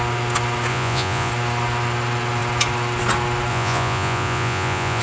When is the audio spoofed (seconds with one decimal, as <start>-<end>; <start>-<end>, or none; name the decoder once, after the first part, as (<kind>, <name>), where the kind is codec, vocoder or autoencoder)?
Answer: 0.7-1.3 (vocoder, Vocos); 3.5-5.0